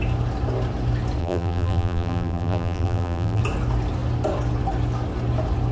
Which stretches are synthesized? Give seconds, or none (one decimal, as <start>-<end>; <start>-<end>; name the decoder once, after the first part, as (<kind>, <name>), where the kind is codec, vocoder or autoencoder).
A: 1.2-3.4 (vocoder, BigVGAN v2)